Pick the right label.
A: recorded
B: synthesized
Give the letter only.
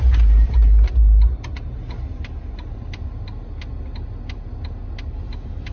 A